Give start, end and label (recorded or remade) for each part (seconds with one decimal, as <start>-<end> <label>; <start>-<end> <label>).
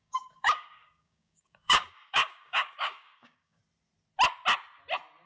0.0-3.6 remade; 3.6-5.3 recorded